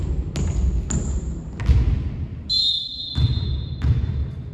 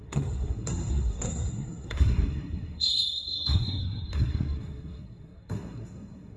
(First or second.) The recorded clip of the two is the first